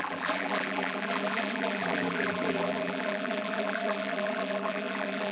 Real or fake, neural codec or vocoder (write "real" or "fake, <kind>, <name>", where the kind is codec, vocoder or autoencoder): fake, vocoder, BigVGAN v2